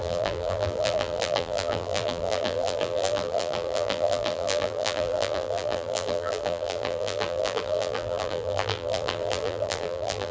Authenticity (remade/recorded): remade